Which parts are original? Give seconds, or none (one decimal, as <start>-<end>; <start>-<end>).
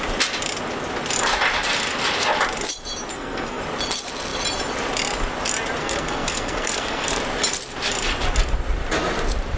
0.0-3.1; 3.6-5.8; 7.2-9.6